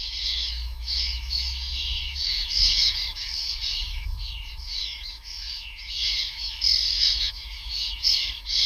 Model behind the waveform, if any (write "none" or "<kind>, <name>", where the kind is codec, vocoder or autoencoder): autoencoder, DAC-VAE